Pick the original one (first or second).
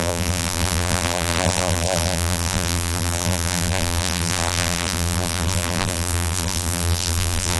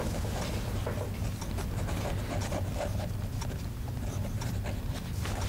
second